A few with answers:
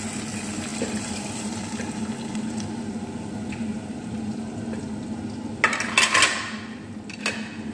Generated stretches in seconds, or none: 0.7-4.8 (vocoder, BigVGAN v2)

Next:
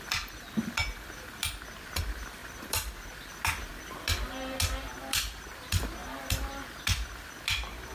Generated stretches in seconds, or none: none

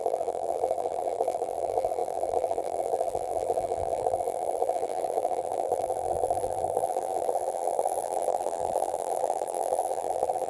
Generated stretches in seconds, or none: 0.0-10.5 (vocoder, BigVGAN v2)

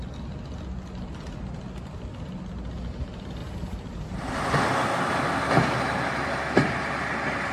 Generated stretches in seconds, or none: 3.4-4.6 (vocoder, BigVGAN v2)

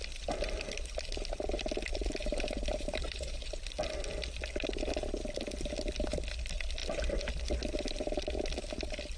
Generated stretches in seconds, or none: 2.2-3.6 (vocoder, BigVGAN v2)

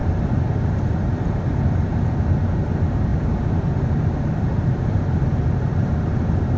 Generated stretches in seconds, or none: 0.0-2.4 (vocoder, BigVGAN v2); 3.1-6.6